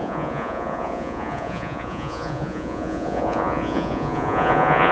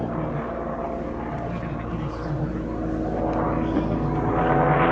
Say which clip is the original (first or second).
second